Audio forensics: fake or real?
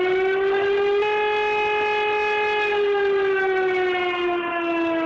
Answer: real